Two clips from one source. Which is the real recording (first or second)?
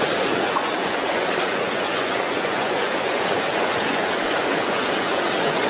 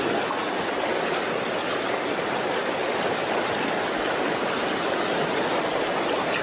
second